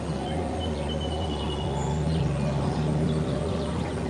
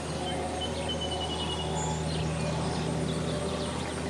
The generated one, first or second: first